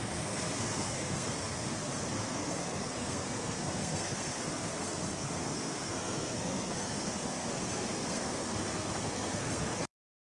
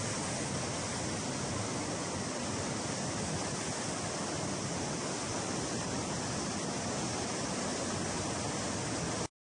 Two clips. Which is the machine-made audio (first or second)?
first